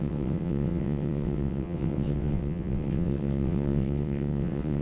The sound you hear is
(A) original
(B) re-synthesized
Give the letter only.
B